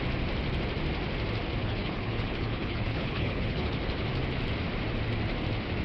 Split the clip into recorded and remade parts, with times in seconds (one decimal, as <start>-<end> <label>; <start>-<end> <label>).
0.0-1.6 recorded; 1.6-3.7 remade; 3.7-5.8 recorded